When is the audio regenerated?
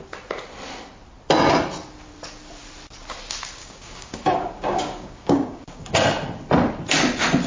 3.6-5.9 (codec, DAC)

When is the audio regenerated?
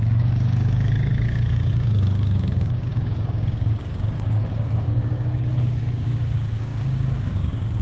0.0-7.8 (codec, DAC)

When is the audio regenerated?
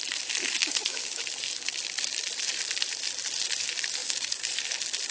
0.6-1.2 (codec, DAC); 4.0-4.5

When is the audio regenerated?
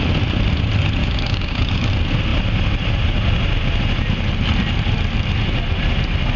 1.0-1.9 (codec, DAC)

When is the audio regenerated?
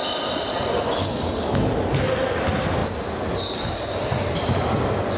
1.0-1.7 (codec, DAC)